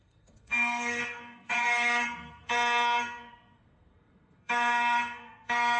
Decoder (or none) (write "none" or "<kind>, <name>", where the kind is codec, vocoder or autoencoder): codec, SNAC